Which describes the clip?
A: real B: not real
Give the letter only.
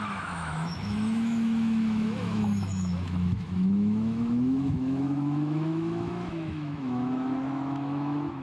B